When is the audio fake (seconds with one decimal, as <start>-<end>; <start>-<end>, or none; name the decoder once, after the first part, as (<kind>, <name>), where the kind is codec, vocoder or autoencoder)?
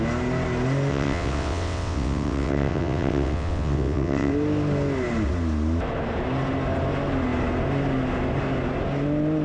0.9-4.3 (vocoder, WaveNeXt)